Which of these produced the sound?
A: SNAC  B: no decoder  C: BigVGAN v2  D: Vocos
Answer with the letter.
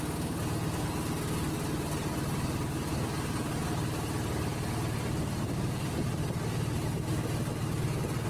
B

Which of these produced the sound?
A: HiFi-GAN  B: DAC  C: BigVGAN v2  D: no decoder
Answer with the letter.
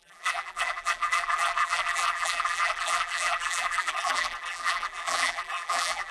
C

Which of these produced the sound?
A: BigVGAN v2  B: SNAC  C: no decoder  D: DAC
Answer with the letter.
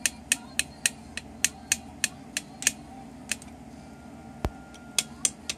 C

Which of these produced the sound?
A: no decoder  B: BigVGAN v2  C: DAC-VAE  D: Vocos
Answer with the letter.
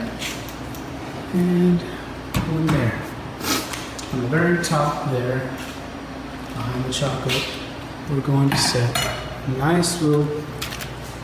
B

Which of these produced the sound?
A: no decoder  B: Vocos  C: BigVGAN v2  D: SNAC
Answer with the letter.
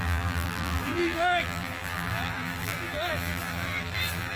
C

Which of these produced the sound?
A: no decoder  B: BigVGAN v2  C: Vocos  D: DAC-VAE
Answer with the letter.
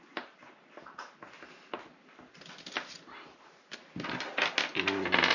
A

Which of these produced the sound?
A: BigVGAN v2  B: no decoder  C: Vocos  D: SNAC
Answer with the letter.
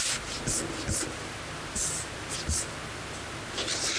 B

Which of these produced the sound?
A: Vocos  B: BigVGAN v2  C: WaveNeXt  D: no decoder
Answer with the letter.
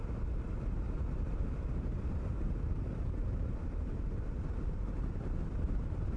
B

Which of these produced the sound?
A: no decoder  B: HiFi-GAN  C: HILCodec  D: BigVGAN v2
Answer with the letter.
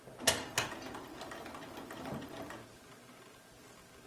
A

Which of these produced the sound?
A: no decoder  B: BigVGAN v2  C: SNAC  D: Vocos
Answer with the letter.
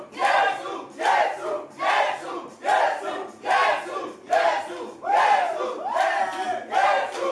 A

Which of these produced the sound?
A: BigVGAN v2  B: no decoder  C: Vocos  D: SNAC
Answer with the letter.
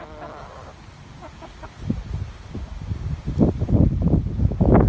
B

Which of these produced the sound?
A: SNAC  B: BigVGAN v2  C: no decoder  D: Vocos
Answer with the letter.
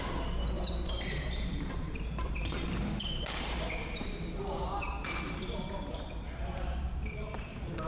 B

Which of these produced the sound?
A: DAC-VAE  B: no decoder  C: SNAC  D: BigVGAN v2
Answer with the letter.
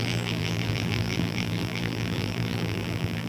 D